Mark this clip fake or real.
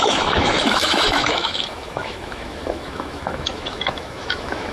fake